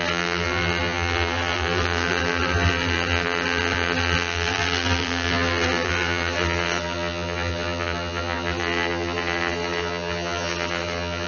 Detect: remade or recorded remade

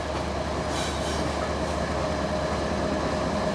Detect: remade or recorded recorded